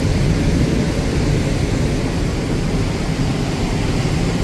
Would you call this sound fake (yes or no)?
yes